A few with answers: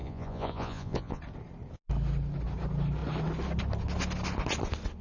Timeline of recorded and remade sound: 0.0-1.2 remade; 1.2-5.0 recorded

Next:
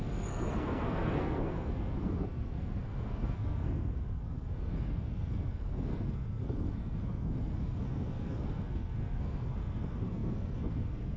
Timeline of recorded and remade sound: 0.0-11.2 remade

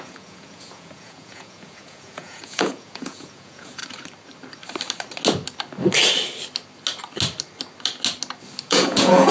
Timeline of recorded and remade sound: 0.0-3.8 remade; 3.8-8.6 recorded; 8.6-9.3 remade

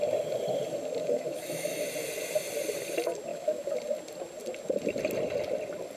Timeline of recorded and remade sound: 0.0-1.0 recorded; 1.0-1.8 remade; 1.8-3.3 recorded; 3.3-3.8 remade; 3.8-6.0 recorded

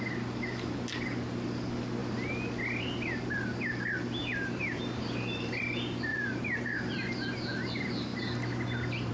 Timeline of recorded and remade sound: 0.0-4.2 recorded; 4.2-5.6 remade; 5.6-6.1 recorded; 6.1-6.9 remade; 6.9-9.1 recorded

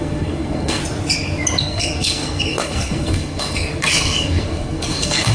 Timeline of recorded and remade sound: 0.0-0.8 remade; 0.8-1.6 recorded; 1.6-5.3 remade

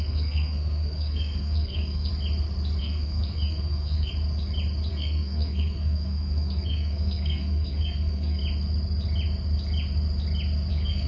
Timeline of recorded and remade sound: 0.0-2.1 remade; 2.1-2.8 recorded; 2.8-4.1 remade; 4.1-4.9 recorded; 4.9-8.4 remade; 8.4-10.7 recorded; 10.7-11.1 remade

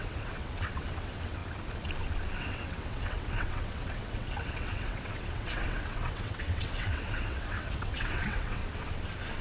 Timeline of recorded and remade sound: 0.0-1.4 remade; 1.4-2.4 recorded; 2.4-8.6 remade; 8.6-9.4 recorded